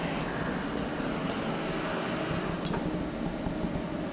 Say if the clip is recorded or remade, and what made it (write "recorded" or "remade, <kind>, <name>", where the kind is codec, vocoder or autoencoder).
recorded